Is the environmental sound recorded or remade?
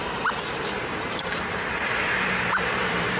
remade